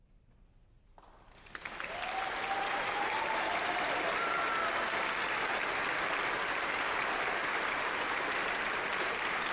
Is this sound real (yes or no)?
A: yes